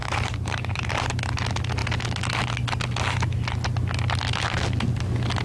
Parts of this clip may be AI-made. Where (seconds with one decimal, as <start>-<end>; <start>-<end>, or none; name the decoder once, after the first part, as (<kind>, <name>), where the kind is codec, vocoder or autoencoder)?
0.0-1.2 (vocoder, BigVGAN v2)